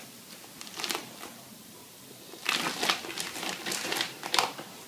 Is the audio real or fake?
real